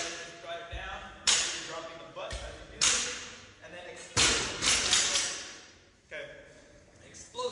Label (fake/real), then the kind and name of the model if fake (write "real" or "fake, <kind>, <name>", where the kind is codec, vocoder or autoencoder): fake, vocoder, BigVGAN v2